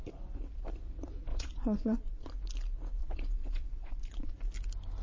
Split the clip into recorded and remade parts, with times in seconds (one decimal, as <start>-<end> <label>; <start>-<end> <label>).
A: 0.0-1.3 recorded; 1.3-2.3 remade; 2.3-3.0 recorded; 3.0-4.3 remade; 4.3-5.0 recorded